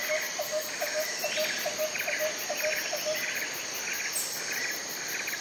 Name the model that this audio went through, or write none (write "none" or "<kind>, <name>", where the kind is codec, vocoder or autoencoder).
none